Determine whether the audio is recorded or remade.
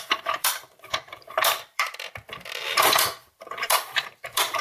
remade